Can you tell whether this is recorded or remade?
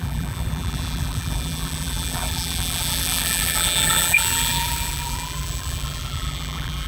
remade